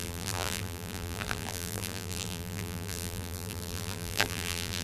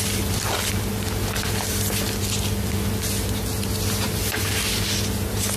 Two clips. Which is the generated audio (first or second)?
first